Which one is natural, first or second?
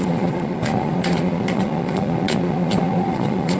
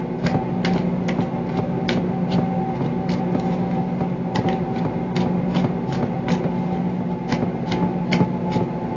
second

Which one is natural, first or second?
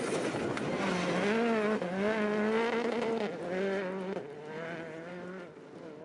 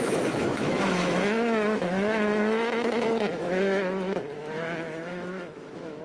first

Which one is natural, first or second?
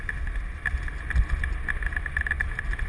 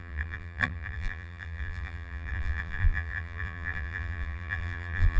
first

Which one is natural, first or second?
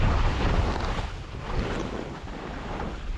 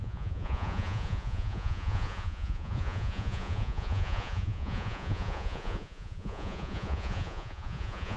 first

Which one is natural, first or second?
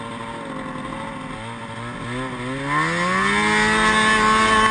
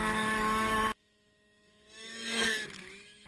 first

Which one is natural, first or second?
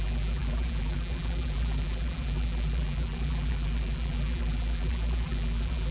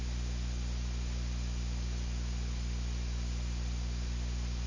second